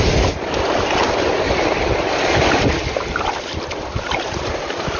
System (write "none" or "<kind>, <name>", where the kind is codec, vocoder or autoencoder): none